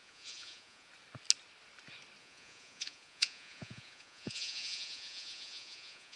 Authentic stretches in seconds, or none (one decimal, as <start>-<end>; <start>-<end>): 0.9-2.2